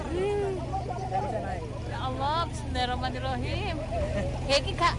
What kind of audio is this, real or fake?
real